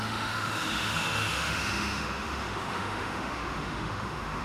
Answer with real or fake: fake